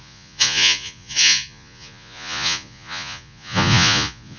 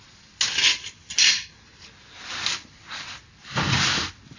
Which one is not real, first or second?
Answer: first